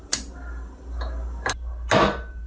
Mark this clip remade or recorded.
recorded